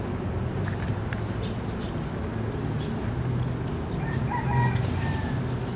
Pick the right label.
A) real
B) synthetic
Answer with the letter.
A